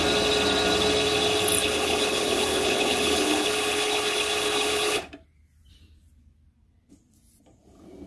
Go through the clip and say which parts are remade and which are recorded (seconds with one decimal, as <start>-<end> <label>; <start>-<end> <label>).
0.0-1.6 recorded; 1.6-5.0 remade; 5.0-8.1 recorded